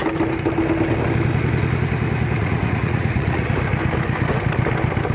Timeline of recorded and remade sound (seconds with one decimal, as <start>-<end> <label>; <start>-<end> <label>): 0.0-2.4 recorded; 2.4-3.5 remade; 3.5-5.1 recorded